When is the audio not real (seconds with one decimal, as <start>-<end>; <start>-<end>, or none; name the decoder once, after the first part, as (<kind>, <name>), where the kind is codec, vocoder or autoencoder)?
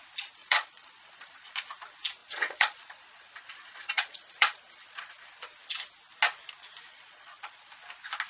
0.4-1.5 (vocoder, Vocos); 2.2-5.1; 6.9-7.7